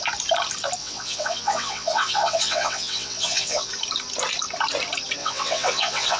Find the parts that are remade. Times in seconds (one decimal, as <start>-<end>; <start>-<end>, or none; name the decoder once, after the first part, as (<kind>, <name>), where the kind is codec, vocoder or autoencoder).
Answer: 0.8-3.7 (vocoder, WaveNeXt); 5.2-6.2